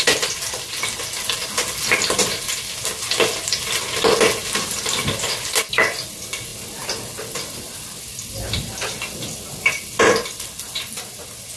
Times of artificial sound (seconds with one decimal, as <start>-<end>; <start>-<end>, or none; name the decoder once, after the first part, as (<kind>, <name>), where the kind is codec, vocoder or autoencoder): none